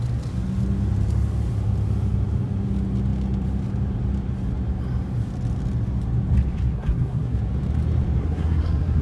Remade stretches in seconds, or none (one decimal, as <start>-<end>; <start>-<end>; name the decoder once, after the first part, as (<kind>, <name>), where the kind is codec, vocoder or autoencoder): 6.5-7.4 (codec, SNAC); 8.2-9.0